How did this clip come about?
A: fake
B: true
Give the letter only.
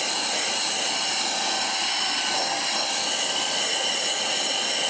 B